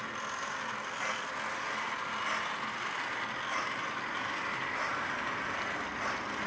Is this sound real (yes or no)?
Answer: yes